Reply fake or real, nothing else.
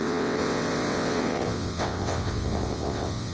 fake